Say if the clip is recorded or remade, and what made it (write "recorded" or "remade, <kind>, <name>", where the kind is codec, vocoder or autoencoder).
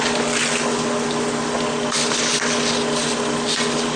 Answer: recorded